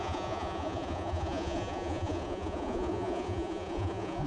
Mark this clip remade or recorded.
remade